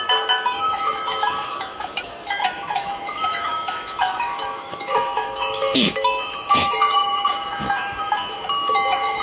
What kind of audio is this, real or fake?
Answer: fake